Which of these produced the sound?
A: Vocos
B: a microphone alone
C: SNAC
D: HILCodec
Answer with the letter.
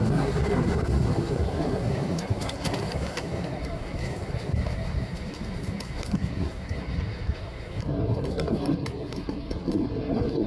C